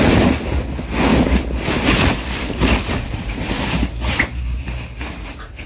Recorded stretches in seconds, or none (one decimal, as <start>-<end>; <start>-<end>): 0.0-1.1; 4.2-5.7